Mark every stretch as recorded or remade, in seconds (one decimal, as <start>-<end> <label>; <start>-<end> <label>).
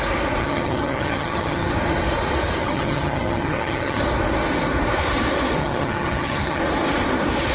0.0-0.4 recorded; 0.4-1.7 remade; 1.7-2.6 recorded; 2.6-4.0 remade; 4.0-5.6 recorded; 5.6-6.6 remade; 6.6-7.5 recorded